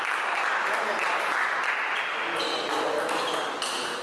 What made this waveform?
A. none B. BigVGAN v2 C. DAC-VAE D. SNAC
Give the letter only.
A